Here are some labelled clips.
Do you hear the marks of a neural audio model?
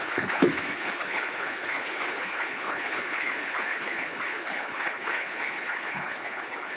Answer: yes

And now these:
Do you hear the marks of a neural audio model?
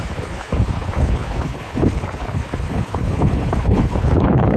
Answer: yes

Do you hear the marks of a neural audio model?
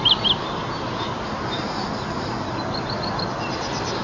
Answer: no